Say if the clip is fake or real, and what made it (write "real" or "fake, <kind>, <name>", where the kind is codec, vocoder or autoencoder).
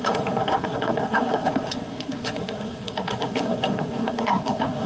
fake, codec, SNAC